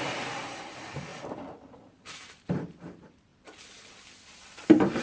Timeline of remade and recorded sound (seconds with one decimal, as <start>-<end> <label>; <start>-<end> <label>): 0.0-1.1 remade; 1.1-2.1 recorded; 2.1-3.3 remade; 3.3-5.0 recorded